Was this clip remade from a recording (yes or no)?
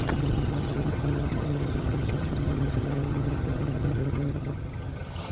yes